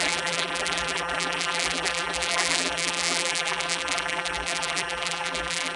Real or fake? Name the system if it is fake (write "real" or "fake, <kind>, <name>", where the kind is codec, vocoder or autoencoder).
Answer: fake, vocoder, BigVGAN v2